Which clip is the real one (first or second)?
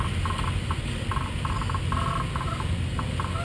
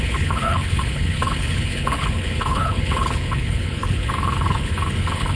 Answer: first